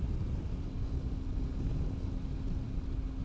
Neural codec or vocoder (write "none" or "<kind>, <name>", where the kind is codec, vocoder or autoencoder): none